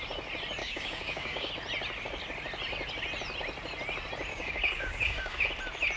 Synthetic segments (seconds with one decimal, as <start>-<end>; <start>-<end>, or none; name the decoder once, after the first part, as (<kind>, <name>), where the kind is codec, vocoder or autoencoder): 0.6-1.5 (codec, DAC); 4.3-5.5